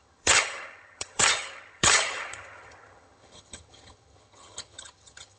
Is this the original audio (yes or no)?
no